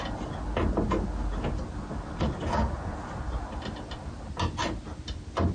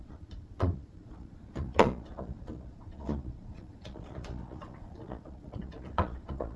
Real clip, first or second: first